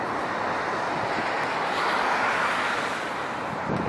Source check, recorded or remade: recorded